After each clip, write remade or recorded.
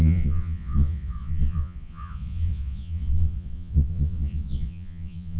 remade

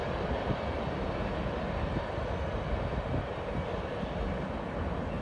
recorded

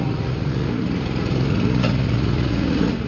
remade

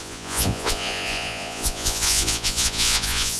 remade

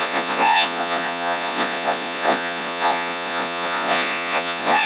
remade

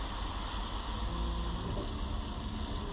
recorded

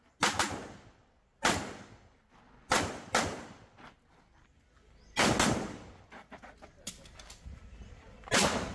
recorded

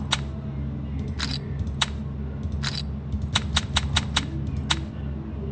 recorded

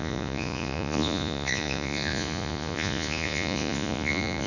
remade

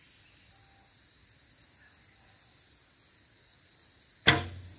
recorded